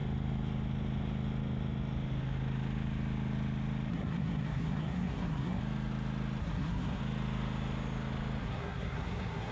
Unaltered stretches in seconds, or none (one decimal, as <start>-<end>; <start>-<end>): 0.0-3.9; 5.6-6.4; 7.0-8.4